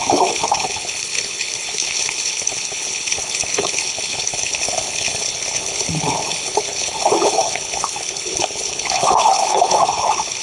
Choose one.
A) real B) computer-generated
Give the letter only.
B